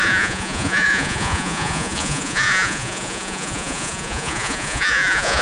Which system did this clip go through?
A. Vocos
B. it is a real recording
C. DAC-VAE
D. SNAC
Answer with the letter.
A